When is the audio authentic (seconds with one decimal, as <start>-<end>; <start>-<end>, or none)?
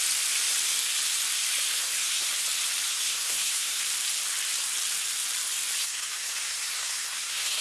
0.0-1.8; 2.3-2.9; 3.8-5.8